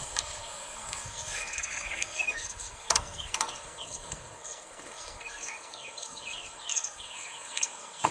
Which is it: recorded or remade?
remade